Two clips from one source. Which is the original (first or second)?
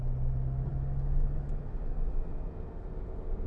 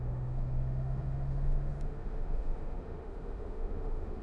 first